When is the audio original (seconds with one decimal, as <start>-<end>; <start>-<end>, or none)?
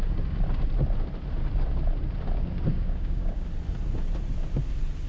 0.0-2.7; 3.5-5.1